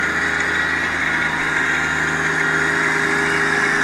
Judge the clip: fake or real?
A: real